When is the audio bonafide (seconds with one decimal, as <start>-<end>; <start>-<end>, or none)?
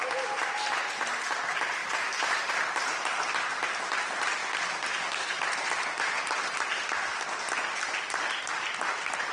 0.0-1.8; 2.5-9.3